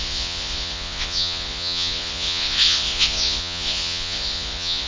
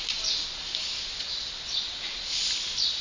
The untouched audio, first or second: second